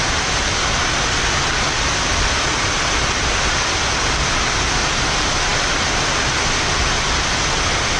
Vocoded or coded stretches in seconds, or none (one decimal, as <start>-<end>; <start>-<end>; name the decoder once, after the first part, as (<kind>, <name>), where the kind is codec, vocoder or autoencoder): none